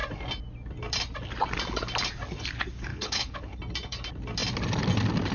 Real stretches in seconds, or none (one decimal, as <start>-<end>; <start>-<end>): 0.0-2.9; 3.6-5.3